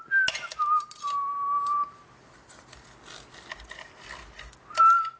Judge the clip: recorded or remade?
recorded